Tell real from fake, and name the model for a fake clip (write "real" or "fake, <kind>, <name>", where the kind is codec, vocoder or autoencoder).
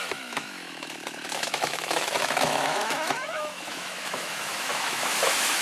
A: fake, autoencoder, DAC-VAE